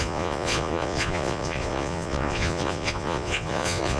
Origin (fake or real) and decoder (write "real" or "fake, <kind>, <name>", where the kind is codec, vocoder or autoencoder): fake, vocoder, Vocos